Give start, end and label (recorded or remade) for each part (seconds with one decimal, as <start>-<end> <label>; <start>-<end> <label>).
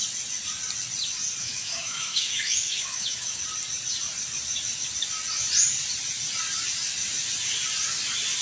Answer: 0.0-1.4 recorded; 1.4-3.4 remade; 3.4-8.4 recorded